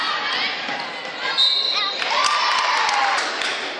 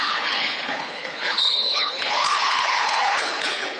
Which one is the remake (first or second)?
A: second